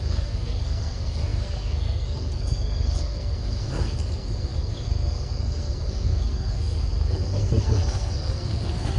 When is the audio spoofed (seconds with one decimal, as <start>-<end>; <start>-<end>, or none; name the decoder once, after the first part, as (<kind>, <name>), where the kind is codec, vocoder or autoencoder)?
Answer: 0.0-9.0 (codec, SNAC)